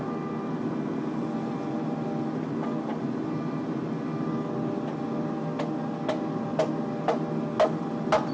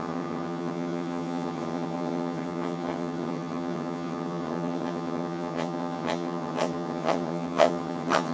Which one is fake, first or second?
second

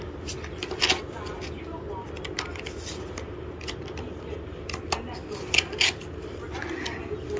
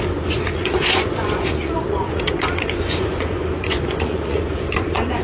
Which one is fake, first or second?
second